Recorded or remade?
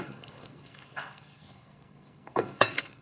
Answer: remade